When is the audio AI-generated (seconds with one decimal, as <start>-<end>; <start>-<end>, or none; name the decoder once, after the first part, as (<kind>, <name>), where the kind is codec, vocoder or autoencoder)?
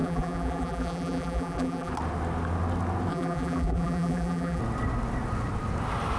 0.0-1.9 (vocoder, BigVGAN v2); 3.1-4.6